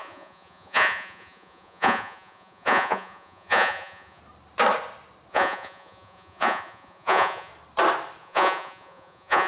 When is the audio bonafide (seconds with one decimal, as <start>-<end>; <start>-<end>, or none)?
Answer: 4.2-5.3; 7.5-8.2